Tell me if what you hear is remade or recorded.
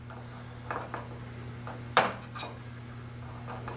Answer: recorded